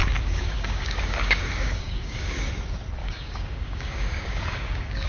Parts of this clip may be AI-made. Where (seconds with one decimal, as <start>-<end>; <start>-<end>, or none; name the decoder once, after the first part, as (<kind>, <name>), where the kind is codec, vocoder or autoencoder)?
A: 0.0-2.5 (codec, DAC); 3.0-5.1